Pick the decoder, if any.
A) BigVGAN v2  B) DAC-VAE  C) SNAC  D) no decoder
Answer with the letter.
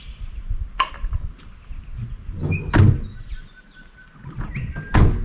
D